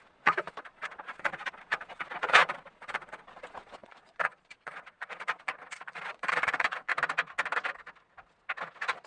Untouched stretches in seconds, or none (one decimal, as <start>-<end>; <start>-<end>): 6.9-9.1